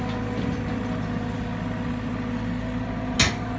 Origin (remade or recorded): recorded